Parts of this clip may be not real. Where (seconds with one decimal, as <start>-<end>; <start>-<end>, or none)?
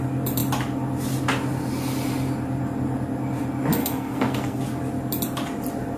3.8-4.6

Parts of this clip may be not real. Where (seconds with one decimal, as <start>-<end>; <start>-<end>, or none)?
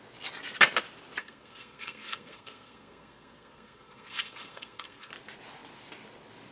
1.2-5.1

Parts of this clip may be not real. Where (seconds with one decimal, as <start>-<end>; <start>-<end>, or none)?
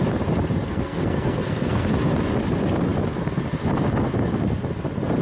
0.7-1.9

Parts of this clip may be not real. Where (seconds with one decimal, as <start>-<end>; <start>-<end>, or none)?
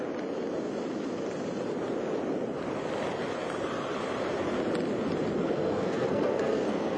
5.4-7.0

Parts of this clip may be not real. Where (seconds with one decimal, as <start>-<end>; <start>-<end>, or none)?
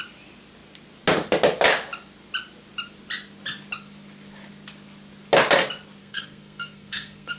6.0-7.4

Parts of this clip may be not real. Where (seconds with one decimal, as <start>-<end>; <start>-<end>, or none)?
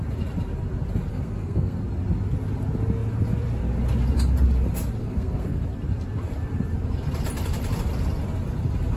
1.1-1.8; 5.0-5.6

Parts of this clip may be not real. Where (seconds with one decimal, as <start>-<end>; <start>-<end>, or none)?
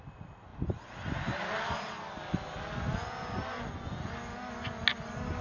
none